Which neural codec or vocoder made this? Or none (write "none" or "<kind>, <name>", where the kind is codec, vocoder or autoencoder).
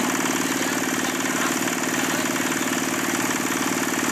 none